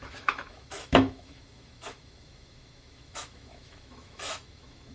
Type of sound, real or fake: fake